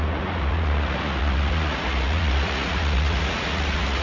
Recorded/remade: remade